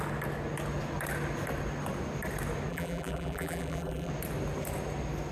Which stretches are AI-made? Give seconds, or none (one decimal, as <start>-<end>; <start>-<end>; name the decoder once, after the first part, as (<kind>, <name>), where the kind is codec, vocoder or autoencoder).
2.7-4.1 (vocoder, BigVGAN v2)